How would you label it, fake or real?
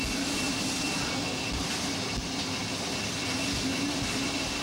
real